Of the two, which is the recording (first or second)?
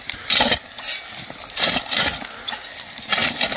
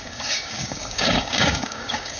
first